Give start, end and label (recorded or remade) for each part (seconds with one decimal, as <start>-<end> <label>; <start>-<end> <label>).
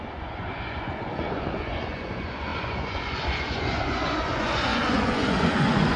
0.0-6.0 remade